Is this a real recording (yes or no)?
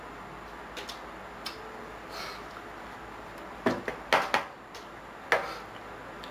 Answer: yes